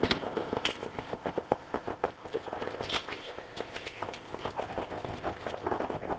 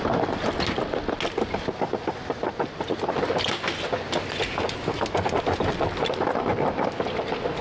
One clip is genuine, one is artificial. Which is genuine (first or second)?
second